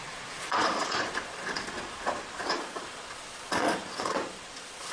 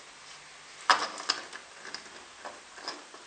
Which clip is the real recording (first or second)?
second